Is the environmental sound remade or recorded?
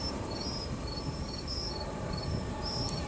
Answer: remade